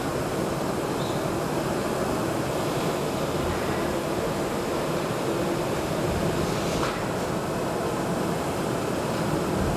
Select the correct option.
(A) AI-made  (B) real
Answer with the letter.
B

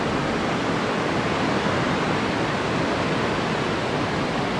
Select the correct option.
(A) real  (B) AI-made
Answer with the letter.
A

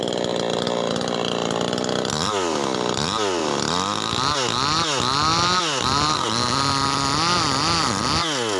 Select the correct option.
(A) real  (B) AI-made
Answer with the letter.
A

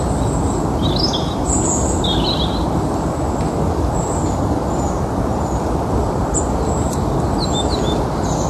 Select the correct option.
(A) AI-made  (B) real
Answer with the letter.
B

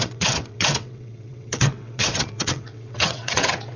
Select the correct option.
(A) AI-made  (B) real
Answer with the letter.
A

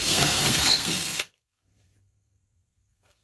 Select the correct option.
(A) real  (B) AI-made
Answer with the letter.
B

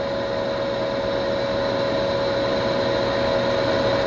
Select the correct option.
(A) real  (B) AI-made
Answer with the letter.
A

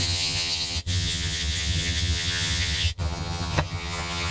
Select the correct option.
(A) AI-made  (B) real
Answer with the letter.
A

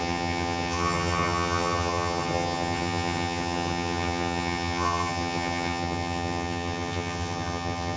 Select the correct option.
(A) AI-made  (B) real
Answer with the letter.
A